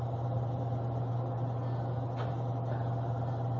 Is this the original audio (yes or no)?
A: yes